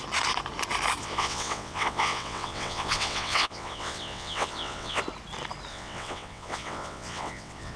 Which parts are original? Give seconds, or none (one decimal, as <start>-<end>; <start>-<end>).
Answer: 0.0-1.0; 5.0-5.7